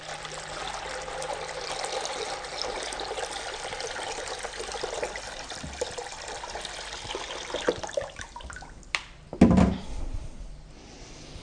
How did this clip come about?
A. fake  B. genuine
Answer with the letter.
A